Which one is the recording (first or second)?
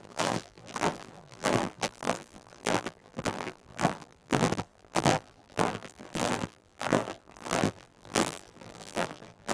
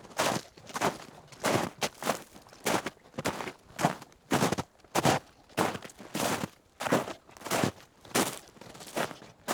second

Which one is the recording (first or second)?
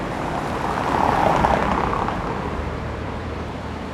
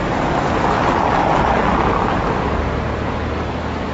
second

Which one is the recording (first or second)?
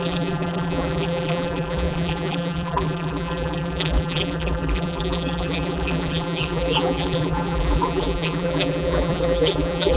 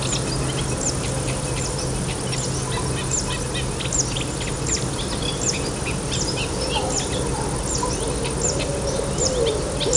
second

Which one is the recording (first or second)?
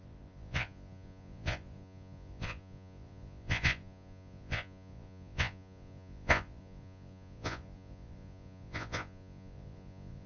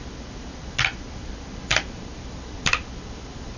second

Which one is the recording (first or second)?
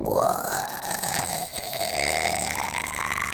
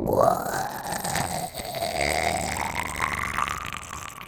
second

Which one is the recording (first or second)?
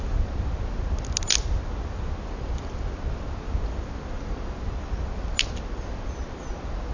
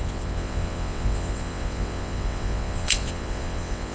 first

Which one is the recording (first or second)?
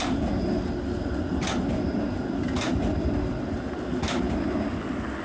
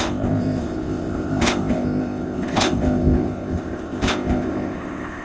first